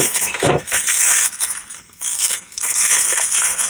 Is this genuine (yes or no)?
no